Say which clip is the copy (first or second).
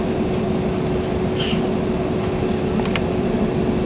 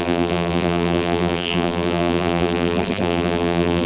second